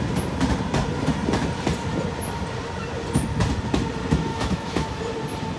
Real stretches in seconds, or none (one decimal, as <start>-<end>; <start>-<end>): 0.0-4.3; 5.0-5.6